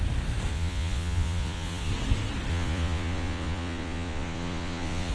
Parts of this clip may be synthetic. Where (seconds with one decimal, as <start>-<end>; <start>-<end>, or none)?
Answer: 0.5-1.9; 2.5-5.1